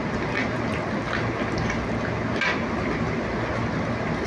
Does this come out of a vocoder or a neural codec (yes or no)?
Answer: no